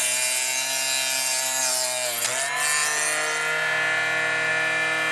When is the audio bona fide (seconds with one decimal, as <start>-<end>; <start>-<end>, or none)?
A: 0.0-5.1

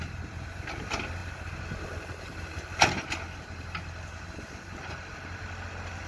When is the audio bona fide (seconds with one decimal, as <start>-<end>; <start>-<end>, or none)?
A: 0.0-6.1

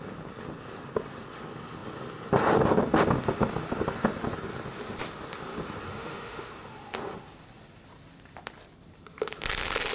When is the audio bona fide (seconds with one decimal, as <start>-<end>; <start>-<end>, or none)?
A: 0.0-5.9; 6.5-9.9

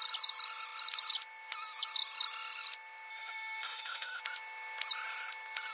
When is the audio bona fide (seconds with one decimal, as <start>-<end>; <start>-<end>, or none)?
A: 0.0-3.1; 4.2-5.7

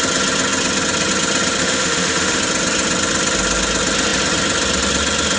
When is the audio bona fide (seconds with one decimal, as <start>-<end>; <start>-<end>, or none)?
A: 0.0-1.6; 2.4-5.4

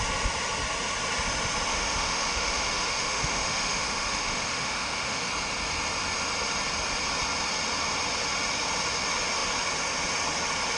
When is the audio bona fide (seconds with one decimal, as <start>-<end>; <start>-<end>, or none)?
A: 0.0-1.7; 5.3-10.8

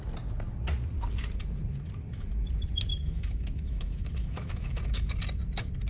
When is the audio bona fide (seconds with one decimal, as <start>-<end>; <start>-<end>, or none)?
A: 0.0-2.9; 4.8-5.9